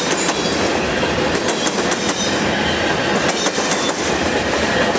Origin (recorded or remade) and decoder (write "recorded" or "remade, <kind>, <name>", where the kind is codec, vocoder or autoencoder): recorded